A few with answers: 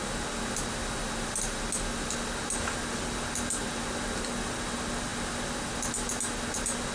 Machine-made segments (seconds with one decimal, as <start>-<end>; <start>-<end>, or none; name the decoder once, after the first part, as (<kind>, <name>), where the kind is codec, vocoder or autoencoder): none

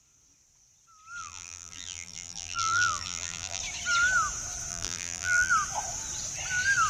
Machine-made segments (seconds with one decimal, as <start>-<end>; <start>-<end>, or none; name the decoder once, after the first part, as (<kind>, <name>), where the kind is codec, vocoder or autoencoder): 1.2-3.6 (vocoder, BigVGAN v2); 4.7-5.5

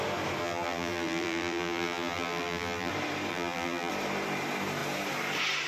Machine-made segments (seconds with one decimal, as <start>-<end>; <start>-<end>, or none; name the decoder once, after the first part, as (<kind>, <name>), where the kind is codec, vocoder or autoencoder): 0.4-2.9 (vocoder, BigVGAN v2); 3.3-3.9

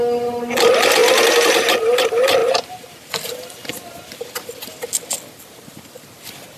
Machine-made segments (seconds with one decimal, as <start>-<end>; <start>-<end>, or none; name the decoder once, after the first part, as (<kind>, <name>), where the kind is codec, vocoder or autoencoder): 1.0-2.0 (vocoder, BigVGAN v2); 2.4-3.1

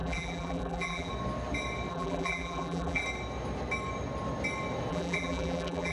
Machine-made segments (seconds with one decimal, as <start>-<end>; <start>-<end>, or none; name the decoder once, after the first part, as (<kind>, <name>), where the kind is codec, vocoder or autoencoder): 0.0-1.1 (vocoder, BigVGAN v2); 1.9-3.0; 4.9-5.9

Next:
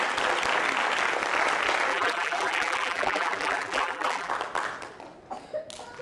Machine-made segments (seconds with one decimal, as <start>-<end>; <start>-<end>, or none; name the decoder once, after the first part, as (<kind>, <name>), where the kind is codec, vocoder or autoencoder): 1.9-4.3 (vocoder, BigVGAN v2)